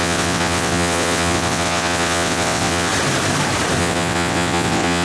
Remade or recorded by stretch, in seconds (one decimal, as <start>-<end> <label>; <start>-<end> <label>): 0.0-2.9 remade; 2.9-3.8 recorded; 3.8-5.0 remade